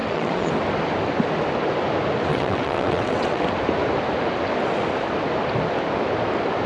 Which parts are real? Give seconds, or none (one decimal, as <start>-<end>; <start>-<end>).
0.5-2.3; 3.4-6.7